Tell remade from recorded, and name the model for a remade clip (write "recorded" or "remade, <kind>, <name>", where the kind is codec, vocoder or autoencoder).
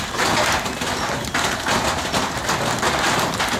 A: recorded